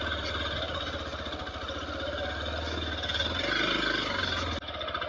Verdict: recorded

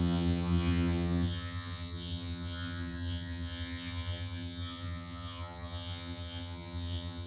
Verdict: remade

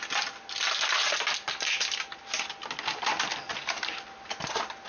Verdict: recorded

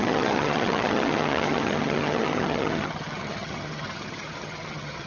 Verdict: remade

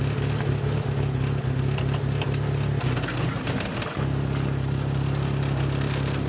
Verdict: recorded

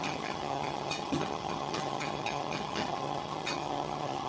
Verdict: remade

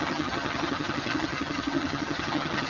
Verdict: remade